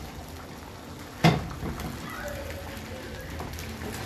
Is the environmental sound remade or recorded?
recorded